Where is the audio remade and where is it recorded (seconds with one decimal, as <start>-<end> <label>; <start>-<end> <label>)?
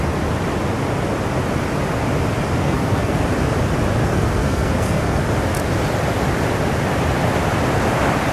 0.0-2.6 recorded; 2.6-3.2 remade; 3.2-4.0 recorded; 4.0-5.2 remade; 5.2-8.3 recorded